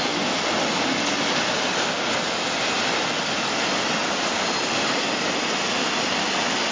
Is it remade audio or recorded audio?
recorded